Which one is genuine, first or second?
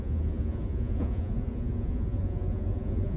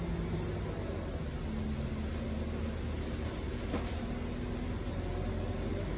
second